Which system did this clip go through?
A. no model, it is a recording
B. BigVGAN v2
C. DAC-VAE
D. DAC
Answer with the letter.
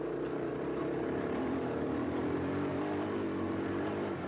A